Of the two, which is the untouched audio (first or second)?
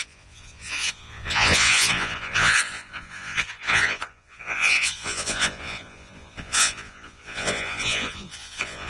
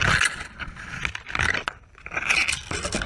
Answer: second